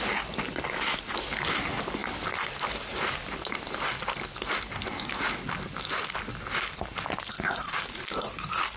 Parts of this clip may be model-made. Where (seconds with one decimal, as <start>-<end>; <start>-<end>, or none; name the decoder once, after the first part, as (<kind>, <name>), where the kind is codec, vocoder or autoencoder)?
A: none